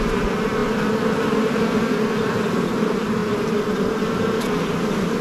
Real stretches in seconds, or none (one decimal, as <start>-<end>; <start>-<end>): 0.0-5.2